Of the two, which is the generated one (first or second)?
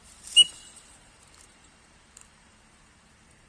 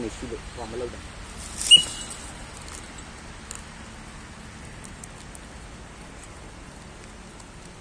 first